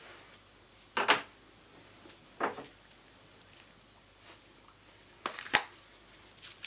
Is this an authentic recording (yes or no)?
yes